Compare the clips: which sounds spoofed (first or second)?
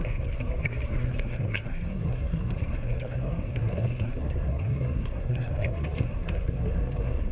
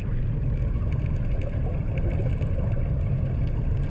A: first